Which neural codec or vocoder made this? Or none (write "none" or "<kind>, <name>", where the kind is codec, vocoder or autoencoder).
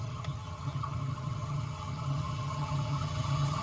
vocoder, HiFi-GAN